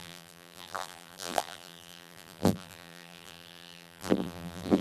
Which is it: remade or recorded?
remade